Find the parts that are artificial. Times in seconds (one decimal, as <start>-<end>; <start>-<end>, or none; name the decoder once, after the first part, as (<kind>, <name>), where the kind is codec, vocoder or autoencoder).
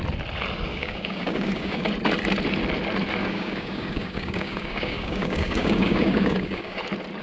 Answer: 0.7-1.9 (codec, DAC); 3.2-6.8